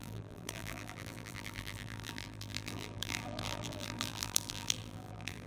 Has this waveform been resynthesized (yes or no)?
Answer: yes